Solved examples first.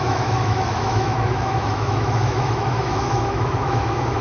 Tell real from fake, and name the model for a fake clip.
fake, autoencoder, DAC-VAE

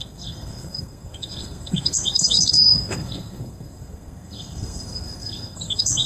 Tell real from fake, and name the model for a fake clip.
fake, codec, SNAC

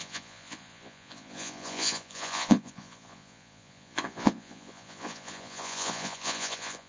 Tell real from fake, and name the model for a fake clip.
fake, vocoder, Vocos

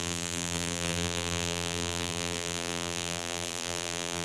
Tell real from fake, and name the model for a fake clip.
fake, vocoder, BigVGAN v2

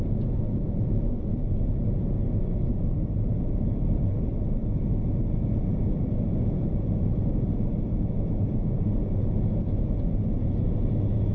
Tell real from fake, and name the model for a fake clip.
fake, vocoder, Vocos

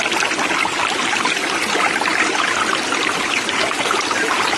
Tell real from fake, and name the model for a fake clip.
real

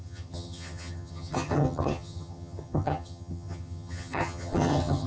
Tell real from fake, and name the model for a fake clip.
fake, vocoder, HiFi-GAN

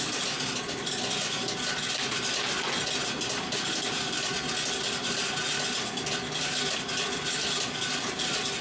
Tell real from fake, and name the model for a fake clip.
real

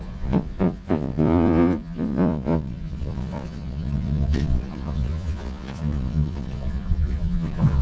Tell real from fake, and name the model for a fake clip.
fake, vocoder, Vocos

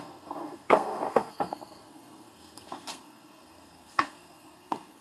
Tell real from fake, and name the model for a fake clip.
fake, codec, SNAC